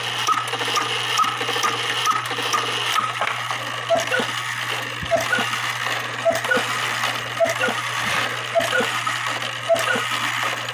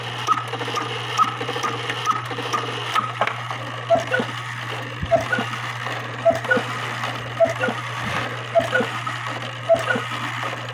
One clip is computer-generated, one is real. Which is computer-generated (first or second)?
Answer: second